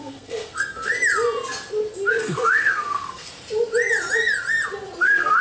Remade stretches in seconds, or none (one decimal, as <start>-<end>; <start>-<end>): 0.0-0.9; 2.1-3.3; 5.0-5.4